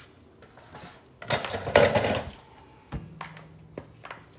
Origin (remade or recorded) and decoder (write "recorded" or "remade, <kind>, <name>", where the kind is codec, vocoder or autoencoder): recorded